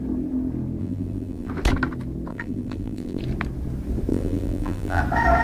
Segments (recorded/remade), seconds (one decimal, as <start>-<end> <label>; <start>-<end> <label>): 0.0-0.8 recorded; 0.8-1.5 remade; 1.5-2.3 recorded; 2.3-3.2 remade; 3.2-4.1 recorded; 4.1-5.0 remade; 5.0-5.4 recorded